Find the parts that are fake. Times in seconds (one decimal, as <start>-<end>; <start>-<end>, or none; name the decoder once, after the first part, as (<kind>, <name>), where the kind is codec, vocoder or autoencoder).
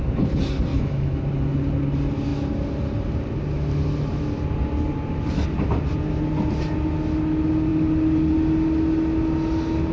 0.7-1.2 (autoencoder, DAC-VAE)